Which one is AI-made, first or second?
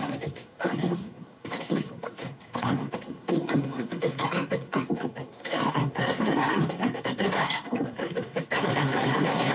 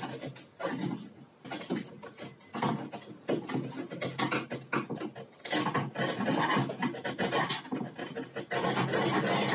first